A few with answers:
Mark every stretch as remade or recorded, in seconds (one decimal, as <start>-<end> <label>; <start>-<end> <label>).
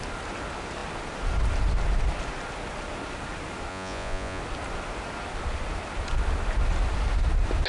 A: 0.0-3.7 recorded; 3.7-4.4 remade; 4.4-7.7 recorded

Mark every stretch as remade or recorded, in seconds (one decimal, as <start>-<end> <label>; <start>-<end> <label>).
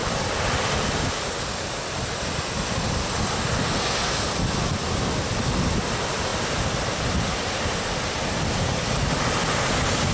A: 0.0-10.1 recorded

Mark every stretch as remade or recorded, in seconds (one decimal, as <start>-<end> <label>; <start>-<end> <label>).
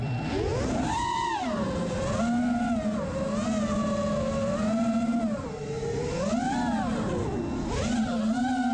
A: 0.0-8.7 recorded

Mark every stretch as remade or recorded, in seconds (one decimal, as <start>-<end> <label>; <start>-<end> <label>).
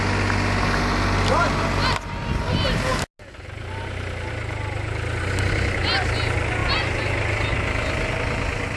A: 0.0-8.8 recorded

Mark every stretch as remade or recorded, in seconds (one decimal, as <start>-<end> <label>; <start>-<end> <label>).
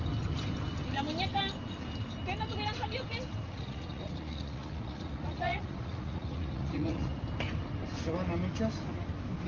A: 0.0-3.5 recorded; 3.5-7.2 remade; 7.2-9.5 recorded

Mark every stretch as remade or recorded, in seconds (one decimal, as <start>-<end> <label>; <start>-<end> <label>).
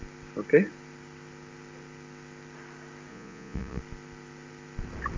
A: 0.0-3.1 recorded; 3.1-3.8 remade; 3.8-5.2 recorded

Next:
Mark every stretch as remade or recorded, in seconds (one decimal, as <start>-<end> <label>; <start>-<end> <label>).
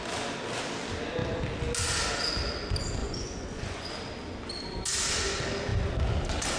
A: 0.0-3.0 recorded; 3.0-3.9 remade; 3.9-6.6 recorded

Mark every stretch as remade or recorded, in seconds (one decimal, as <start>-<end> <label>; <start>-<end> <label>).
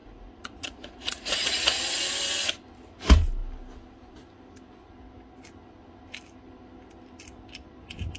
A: 0.0-1.8 remade; 1.8-8.2 recorded